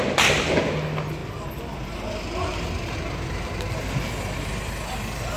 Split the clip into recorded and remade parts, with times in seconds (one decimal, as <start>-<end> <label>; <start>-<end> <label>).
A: 0.0-5.4 recorded